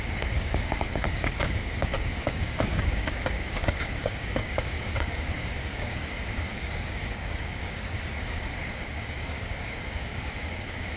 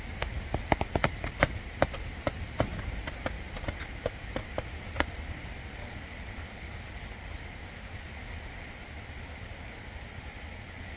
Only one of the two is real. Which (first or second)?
second